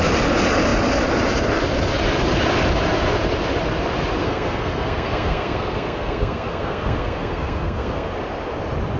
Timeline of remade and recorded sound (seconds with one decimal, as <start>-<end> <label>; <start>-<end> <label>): 0.0-4.2 recorded; 4.2-8.1 remade; 8.1-9.0 recorded

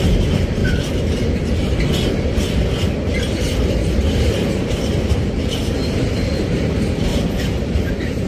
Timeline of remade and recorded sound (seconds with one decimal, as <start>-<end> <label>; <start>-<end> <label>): 0.0-0.6 remade; 0.6-4.2 recorded; 4.2-8.3 remade

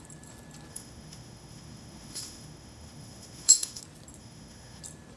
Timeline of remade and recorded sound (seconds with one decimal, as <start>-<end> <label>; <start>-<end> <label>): 0.0-0.7 recorded; 0.7-3.8 remade; 3.8-4.2 recorded; 4.2-4.8 remade; 4.8-5.2 recorded

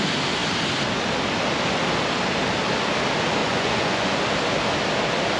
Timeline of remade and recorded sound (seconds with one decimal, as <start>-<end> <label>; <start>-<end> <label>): 0.0-3.4 recorded; 3.4-4.2 remade; 4.2-5.4 recorded

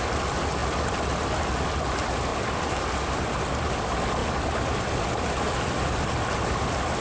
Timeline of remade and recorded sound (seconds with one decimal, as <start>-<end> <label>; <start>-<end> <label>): 0.0-2.3 recorded; 2.3-3.0 remade; 3.0-7.0 recorded

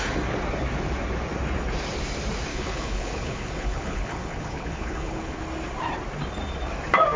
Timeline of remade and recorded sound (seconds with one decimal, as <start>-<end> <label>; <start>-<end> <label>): 0.0-2.5 recorded; 2.5-5.4 remade; 5.4-7.2 recorded

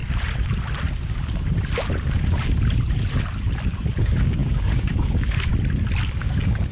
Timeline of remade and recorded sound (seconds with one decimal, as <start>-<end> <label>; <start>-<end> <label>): 0.0-4.0 recorded; 4.0-5.5 remade; 5.5-6.2 recorded; 6.2-6.7 remade